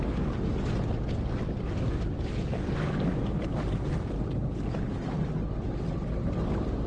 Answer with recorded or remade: recorded